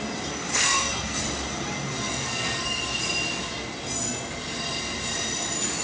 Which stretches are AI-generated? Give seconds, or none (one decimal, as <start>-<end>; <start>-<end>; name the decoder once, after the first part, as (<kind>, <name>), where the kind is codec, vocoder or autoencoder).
0.5-1.2 (codec, SNAC); 2.1-2.8